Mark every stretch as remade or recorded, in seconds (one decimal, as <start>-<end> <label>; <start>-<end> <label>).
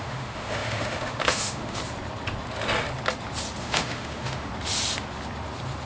0.0-1.8 remade; 1.8-3.6 recorded; 3.6-4.5 remade; 4.5-5.9 recorded